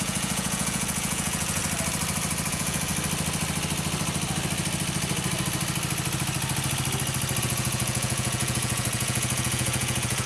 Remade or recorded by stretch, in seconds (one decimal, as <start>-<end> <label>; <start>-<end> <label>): 0.0-1.6 remade; 1.6-2.5 recorded; 2.5-2.9 remade; 2.9-7.4 recorded; 7.4-10.3 remade

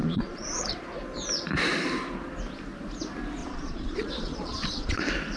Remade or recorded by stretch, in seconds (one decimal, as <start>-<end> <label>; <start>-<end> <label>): 0.0-0.7 remade; 0.7-3.4 recorded; 3.4-5.0 remade; 5.0-5.4 recorded

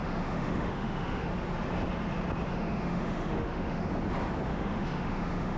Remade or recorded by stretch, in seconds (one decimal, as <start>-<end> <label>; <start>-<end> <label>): 0.0-1.3 remade; 1.3-2.5 recorded; 2.5-3.9 remade; 3.9-4.5 recorded; 4.5-5.6 remade

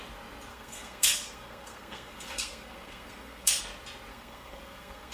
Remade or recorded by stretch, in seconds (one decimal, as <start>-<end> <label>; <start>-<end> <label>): 0.0-0.5 recorded; 0.5-3.6 remade; 3.6-4.1 recorded; 4.1-5.1 remade

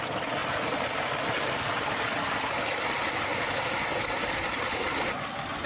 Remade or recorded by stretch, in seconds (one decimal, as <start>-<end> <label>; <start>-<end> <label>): 0.0-0.4 recorded; 0.4-2.1 remade; 2.1-5.7 recorded

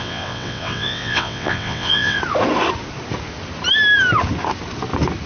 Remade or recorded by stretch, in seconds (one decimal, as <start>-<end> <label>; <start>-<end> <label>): 0.0-2.2 remade; 2.2-5.3 recorded

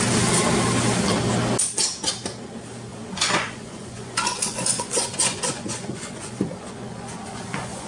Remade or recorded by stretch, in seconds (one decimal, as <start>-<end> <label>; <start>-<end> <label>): 0.0-2.9 recorded; 2.9-7.9 remade